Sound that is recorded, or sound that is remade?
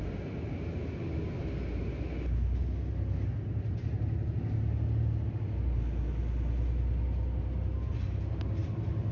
recorded